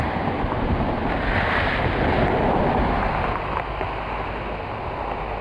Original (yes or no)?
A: yes